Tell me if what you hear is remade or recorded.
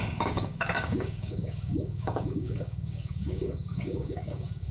remade